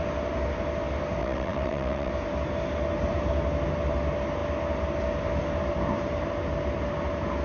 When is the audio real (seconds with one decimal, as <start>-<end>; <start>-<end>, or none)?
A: 0.0-1.2; 2.1-7.4